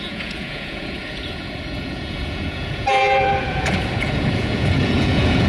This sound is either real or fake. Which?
fake